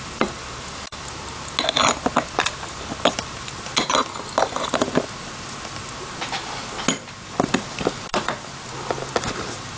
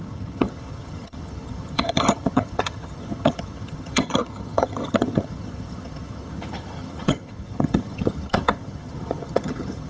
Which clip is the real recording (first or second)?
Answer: first